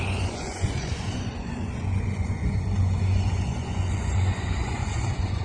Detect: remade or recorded remade